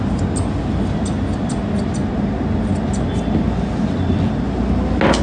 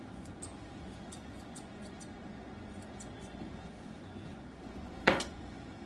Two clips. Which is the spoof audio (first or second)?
second